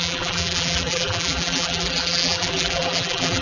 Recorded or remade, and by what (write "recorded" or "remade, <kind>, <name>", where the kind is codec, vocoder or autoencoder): remade, vocoder, BigVGAN v2